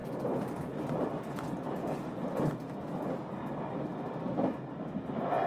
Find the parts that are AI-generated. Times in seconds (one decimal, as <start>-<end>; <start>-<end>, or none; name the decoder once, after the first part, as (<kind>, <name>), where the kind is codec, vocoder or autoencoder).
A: none